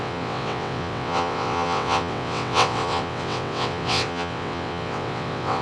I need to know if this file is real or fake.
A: fake